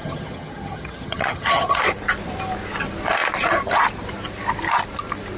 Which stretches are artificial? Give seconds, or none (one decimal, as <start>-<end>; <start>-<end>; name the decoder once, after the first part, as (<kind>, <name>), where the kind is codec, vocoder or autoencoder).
0.0-1.8 (vocoder, HiFi-GAN)